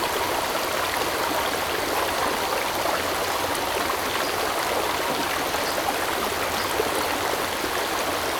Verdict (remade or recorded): recorded